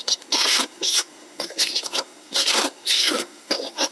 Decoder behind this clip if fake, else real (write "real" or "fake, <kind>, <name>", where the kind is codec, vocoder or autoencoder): fake, codec, SNAC